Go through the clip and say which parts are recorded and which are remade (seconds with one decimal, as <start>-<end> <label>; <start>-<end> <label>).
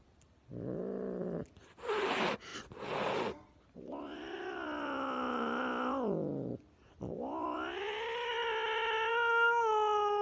0.0-10.2 recorded